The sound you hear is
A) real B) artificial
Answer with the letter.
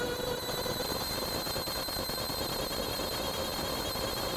A